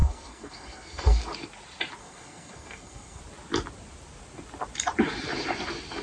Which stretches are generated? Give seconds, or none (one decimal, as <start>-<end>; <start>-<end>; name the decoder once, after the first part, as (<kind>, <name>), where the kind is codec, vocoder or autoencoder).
0.0-1.2 (codec, SNAC); 2.0-3.2